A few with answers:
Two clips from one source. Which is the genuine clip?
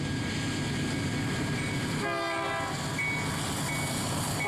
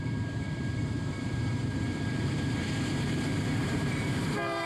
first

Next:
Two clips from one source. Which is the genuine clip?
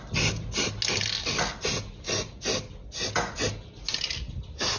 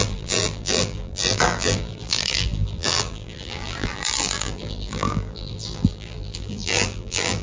first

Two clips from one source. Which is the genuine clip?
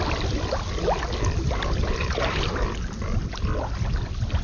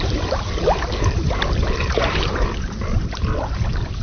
first